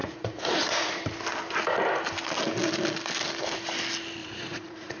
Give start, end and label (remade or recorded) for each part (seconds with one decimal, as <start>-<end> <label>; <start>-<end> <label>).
0.0-1.0 remade; 1.0-4.2 recorded; 4.2-5.0 remade